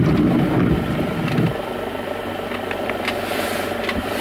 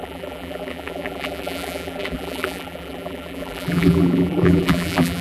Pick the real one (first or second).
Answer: first